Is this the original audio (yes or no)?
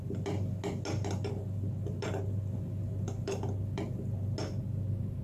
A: yes